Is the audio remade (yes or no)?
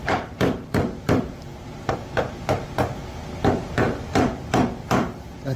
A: yes